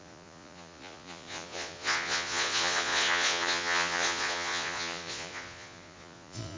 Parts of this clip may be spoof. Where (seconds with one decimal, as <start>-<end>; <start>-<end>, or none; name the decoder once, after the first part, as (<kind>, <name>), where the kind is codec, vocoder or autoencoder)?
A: 0.0-6.6 (vocoder, Vocos)